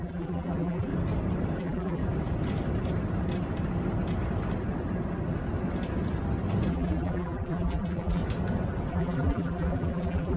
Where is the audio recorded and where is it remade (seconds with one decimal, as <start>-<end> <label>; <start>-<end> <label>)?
0.0-0.9 remade; 0.9-1.6 recorded; 1.6-2.0 remade; 2.0-6.7 recorded; 6.7-8.2 remade; 8.2-8.9 recorded; 8.9-10.4 remade